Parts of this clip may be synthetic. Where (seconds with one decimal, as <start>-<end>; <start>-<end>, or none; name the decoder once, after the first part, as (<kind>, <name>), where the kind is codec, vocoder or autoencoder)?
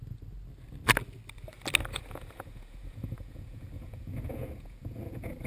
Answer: 1.9-5.5 (vocoder, Vocos)